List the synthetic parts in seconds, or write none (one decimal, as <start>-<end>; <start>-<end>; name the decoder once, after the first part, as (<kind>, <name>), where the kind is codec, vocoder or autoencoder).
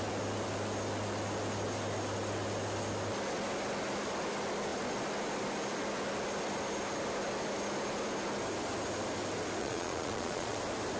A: 9.6-10.6 (vocoder, Vocos)